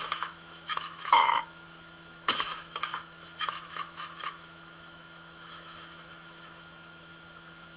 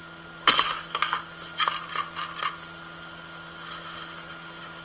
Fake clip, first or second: first